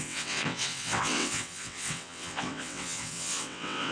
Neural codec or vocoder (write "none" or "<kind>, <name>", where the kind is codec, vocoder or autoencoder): vocoder, WaveNeXt